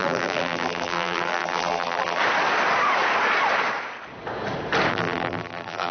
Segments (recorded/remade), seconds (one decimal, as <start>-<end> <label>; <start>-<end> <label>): 0.0-2.2 remade; 2.2-4.9 recorded; 4.9-5.9 remade